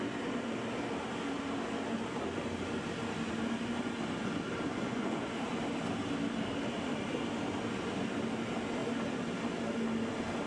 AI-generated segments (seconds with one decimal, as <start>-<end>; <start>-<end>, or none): 4.7-5.3